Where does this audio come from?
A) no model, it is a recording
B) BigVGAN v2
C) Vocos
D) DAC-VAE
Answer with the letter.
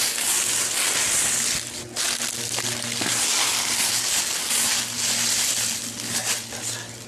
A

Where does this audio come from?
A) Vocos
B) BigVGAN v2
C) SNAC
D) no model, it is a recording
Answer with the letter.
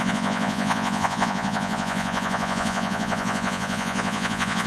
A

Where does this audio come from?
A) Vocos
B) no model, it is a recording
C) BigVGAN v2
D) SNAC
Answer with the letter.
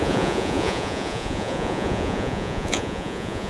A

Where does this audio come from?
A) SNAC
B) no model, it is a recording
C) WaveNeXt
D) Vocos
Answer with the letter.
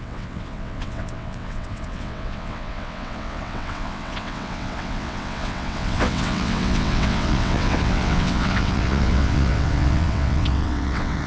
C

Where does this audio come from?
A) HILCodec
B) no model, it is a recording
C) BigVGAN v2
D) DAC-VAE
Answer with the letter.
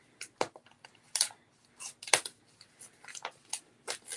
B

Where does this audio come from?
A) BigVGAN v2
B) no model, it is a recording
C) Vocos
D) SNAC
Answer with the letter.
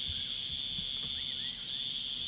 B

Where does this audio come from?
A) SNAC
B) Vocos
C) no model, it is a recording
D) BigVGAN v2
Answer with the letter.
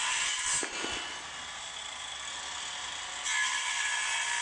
C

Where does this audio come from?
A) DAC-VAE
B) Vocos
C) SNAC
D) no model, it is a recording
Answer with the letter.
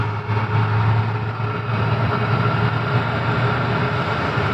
D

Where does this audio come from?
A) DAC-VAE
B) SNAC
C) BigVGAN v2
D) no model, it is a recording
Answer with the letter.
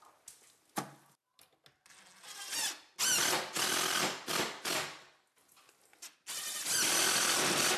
D